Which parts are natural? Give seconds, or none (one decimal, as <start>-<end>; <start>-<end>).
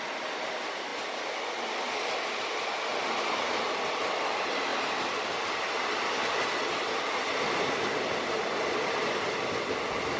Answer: 0.0-10.2